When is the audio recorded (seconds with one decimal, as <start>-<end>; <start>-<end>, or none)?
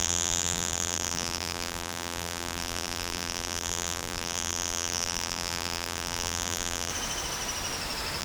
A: 6.9-8.2